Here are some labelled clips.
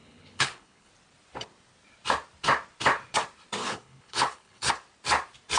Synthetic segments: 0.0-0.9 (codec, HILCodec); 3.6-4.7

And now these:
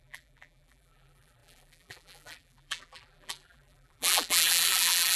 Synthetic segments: 0.0-5.2 (vocoder, BigVGAN v2)

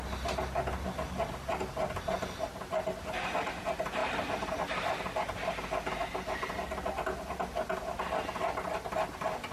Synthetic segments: none

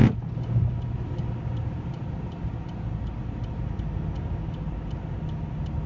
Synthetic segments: none

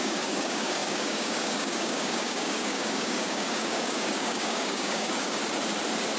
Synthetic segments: 0.0-5.4 (codec, DAC)

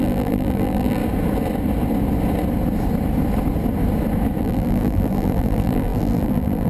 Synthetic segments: 0.0-1.0 (vocoder, BigVGAN v2); 4.4-6.7